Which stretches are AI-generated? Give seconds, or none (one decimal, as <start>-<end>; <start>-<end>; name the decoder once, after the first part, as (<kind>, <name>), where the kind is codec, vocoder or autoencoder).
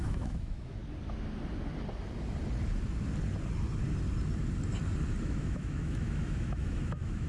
0.0-0.8 (autoencoder, DAC-VAE); 5.2-7.3